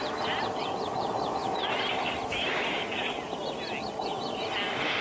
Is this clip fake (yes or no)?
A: no